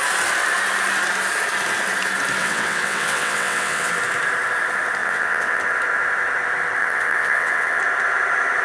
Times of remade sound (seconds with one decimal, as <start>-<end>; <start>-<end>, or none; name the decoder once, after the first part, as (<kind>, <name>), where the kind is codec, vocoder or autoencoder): 2.4-3.9 (vocoder, WaveNeXt); 5.0-5.6; 6.8-7.8